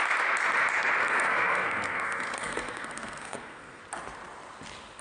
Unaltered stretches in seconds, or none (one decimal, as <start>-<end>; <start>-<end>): 0.0-1.0; 3.8-5.0